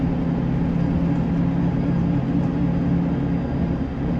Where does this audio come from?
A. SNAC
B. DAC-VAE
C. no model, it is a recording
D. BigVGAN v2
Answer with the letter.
C